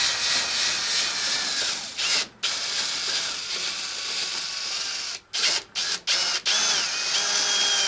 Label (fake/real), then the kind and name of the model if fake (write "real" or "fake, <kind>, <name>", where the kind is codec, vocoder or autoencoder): real